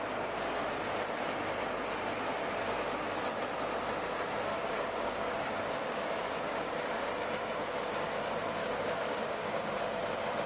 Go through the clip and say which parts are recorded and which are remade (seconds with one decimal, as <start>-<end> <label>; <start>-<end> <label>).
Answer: 0.0-4.5 recorded; 4.5-7.1 remade; 7.1-8.6 recorded; 8.6-9.8 remade; 9.8-10.5 recorded